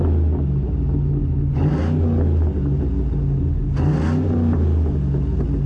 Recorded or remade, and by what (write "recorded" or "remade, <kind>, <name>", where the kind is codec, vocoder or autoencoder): recorded